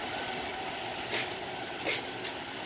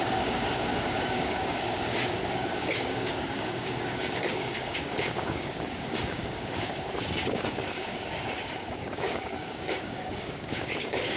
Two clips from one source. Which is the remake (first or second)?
second